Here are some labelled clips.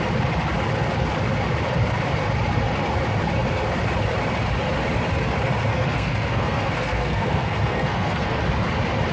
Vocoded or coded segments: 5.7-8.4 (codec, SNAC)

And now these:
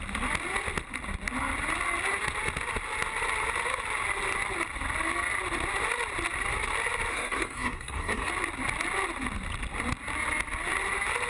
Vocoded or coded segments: 7.1-8.3 (codec, SNAC)